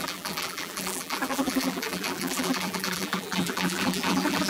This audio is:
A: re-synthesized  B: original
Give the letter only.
A